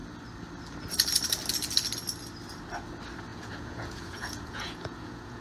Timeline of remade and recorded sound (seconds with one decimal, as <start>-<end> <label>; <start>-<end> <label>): 0.0-3.3 recorded; 3.3-5.4 remade